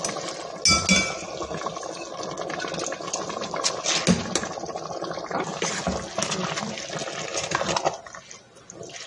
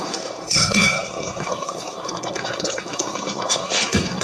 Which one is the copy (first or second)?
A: second